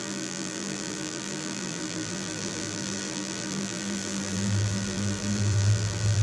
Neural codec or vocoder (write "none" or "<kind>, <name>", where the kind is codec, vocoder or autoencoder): vocoder, BigVGAN v2